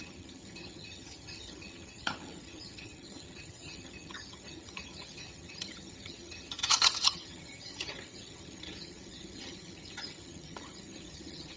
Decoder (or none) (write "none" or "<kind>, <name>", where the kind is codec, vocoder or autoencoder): vocoder, HiFi-GAN